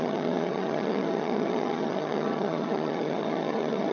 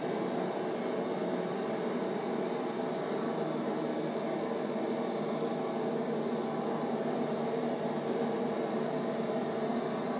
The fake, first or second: first